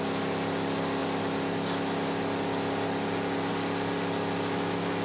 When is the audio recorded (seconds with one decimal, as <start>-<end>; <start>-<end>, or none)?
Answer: 0.0-5.0